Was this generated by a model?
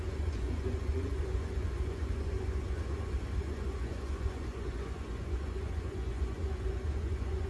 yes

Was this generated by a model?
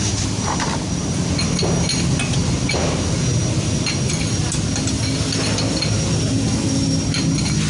no